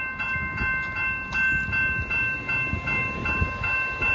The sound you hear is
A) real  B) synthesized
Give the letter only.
A